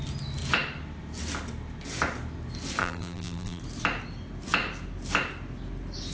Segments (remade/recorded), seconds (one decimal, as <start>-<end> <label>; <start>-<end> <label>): 0.0-2.8 recorded; 2.8-3.6 remade; 3.6-6.1 recorded